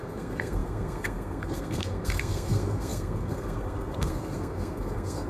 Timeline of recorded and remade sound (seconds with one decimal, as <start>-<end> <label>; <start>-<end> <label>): 0.0-5.3 remade